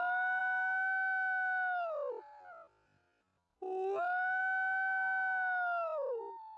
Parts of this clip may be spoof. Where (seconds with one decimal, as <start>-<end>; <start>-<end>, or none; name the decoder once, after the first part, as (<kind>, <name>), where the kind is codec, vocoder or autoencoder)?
none